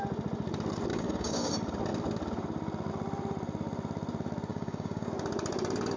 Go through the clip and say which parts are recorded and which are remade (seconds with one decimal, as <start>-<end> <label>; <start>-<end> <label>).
0.0-0.9 recorded; 0.9-1.5 remade; 1.5-4.5 recorded; 4.5-5.1 remade; 5.1-6.0 recorded